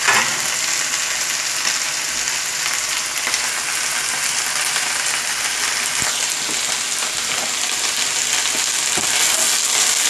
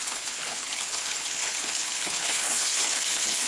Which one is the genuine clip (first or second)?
first